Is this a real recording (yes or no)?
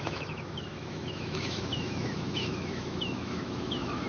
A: no